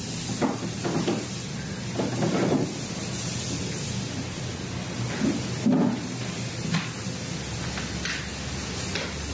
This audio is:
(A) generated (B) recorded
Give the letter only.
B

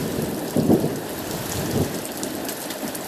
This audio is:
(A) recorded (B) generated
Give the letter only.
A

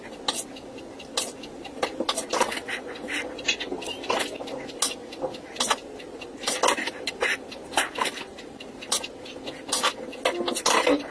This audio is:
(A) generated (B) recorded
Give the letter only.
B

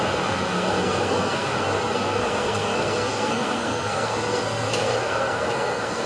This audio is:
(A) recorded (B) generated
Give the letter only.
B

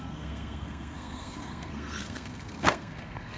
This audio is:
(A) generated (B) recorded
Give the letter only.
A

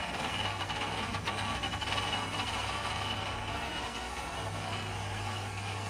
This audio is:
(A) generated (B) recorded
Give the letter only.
A